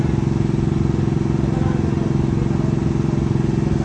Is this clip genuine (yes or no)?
yes